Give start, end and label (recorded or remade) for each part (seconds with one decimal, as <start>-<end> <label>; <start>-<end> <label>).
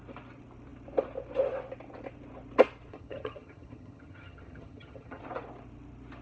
0.0-2.9 recorded; 2.9-5.2 remade; 5.2-6.2 recorded